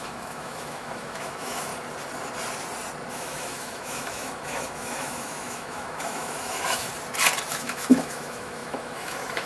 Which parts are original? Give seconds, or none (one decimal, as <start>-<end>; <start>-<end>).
1.7-3.1; 6.9-7.5